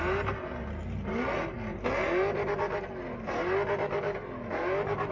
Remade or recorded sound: recorded